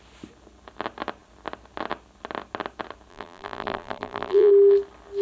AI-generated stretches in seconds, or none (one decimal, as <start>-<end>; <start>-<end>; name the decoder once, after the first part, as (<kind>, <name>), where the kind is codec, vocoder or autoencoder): 3.1-4.5 (vocoder, BigVGAN v2)